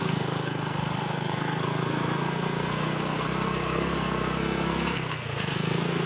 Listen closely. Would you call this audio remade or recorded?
remade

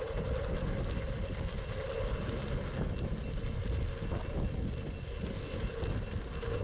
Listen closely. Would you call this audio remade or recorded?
recorded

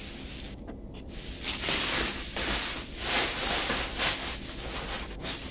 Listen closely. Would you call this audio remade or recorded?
recorded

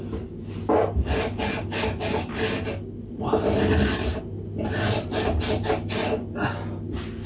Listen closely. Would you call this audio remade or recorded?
recorded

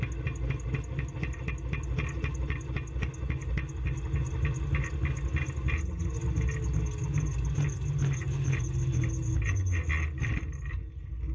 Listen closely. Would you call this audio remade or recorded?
recorded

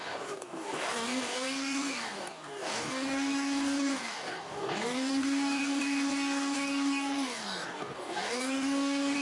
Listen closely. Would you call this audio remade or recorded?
remade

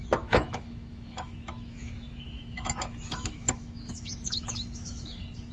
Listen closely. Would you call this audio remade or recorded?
remade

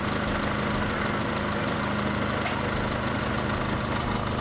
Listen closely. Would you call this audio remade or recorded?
recorded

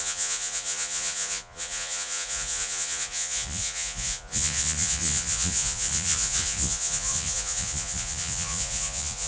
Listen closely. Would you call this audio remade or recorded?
remade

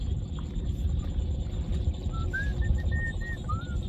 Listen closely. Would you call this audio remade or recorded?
recorded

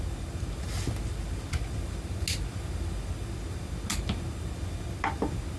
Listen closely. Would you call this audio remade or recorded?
recorded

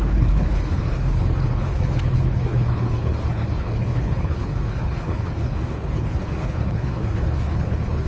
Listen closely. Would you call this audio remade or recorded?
remade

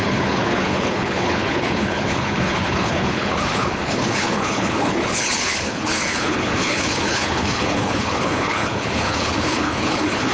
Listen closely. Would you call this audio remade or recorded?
remade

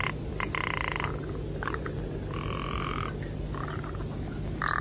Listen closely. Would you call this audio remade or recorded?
recorded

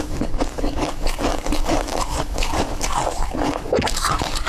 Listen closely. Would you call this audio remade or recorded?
remade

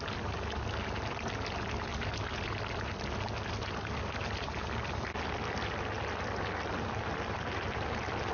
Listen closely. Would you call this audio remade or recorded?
recorded